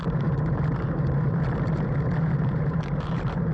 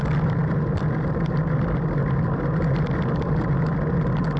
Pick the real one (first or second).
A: second